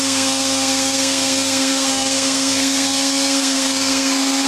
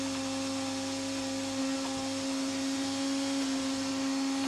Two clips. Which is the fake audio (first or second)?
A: first